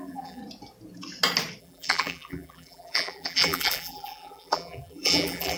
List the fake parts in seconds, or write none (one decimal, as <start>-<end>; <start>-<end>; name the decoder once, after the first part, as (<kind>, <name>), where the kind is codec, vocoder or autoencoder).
0.0-0.4 (vocoder, BigVGAN v2); 1.6-5.6